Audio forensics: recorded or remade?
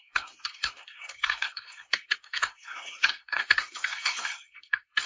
remade